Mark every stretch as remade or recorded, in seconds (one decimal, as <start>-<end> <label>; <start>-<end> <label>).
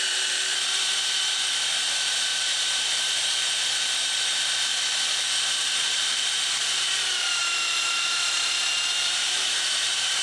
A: 0.0-4.7 remade; 4.7-5.4 recorded; 5.4-7.4 remade; 7.4-8.9 recorded; 8.9-10.2 remade